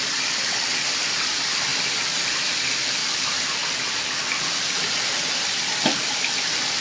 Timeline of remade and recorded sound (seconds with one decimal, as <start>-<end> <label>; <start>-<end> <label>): 0.0-6.8 recorded